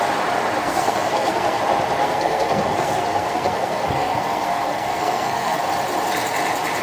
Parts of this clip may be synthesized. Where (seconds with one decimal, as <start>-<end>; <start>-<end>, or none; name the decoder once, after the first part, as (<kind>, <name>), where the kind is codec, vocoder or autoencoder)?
0.6-1.6 (codec, SNAC); 2.0-5.6